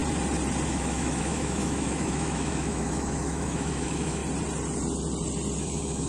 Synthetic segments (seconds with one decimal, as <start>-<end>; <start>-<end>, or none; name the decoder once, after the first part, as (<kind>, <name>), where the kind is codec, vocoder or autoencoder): 0.7-4.2 (autoencoder, DAC-VAE); 5.6-6.1

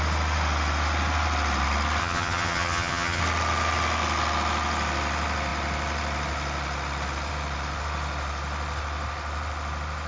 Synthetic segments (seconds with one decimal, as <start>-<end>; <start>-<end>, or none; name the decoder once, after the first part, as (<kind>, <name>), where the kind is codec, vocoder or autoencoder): 2.0-3.2 (vocoder, HiFi-GAN)

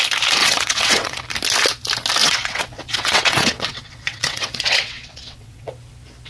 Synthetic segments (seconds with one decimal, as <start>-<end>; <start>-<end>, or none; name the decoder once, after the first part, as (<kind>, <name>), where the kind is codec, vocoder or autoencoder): 0.4-1.2 (vocoder, WaveNeXt); 2.2-5.7

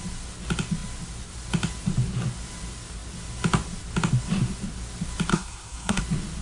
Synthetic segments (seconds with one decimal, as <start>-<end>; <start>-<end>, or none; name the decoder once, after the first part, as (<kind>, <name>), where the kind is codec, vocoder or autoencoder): 5.3-6.0 (codec, SNAC)

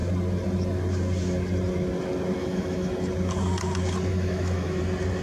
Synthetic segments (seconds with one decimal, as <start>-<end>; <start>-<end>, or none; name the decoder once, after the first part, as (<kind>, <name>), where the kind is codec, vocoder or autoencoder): 2.4-2.9 (autoencoder, DAC-VAE); 4.1-4.8

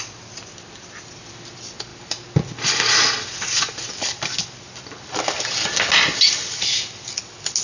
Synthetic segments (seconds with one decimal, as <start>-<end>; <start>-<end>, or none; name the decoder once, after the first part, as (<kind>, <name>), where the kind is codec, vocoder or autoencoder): none

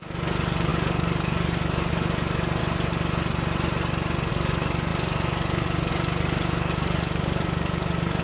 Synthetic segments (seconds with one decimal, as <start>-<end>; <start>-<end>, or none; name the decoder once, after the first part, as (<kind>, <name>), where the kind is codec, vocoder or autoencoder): 0.0-2.6 (codec, DAC); 4.3-8.2